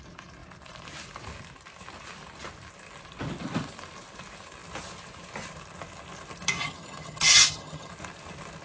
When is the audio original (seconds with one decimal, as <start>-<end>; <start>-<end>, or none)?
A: 0.0-6.6; 7.9-8.6